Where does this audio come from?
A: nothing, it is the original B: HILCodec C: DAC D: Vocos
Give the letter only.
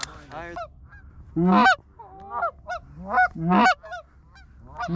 A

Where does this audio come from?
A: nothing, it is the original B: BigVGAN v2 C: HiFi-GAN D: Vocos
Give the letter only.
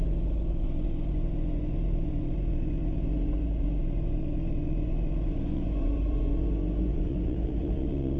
D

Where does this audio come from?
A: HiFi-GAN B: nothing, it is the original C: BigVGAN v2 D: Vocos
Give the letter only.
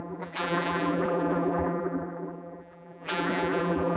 C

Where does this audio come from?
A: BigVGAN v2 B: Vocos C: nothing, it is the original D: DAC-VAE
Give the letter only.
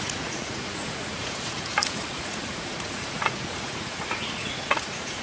B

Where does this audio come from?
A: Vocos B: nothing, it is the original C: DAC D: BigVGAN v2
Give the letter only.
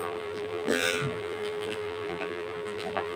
D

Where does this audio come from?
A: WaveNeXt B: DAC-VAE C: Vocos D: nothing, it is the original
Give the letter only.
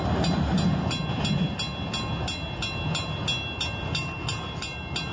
D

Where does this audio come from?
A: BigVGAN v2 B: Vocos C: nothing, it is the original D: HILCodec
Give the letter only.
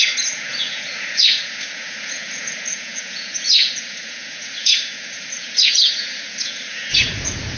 B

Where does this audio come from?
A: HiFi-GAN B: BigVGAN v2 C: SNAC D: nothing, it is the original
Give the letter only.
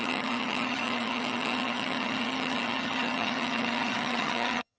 A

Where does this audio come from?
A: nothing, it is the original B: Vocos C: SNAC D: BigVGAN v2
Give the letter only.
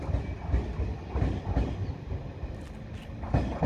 A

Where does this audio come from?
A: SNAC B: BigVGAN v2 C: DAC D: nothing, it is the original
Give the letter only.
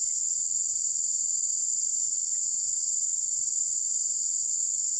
B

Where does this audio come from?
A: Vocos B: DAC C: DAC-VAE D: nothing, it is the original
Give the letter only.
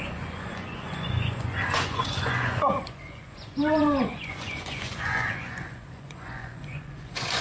A